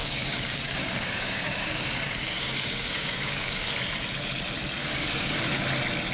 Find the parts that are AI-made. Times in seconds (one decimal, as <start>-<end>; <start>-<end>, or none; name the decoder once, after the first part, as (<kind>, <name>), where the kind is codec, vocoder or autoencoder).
0.0-3.7 (codec, DAC); 4.8-5.4